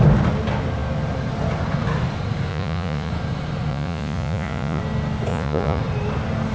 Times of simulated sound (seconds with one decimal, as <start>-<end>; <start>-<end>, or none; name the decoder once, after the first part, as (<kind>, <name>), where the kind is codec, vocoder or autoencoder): 2.5-3.1 (vocoder, Vocos); 3.7-4.8; 5.3-5.8